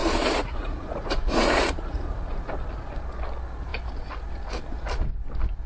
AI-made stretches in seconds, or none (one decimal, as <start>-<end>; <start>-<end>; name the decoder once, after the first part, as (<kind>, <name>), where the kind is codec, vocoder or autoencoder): 0.0-2.5 (vocoder, Vocos)